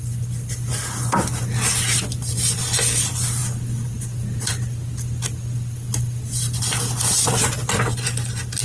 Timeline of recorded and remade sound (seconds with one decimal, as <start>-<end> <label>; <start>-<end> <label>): 0.0-8.6 recorded